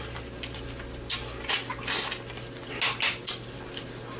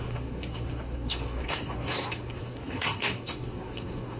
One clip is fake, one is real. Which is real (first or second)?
first